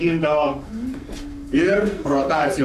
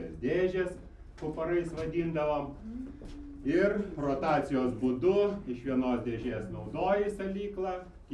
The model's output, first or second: first